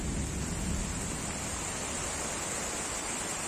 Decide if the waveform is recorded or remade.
recorded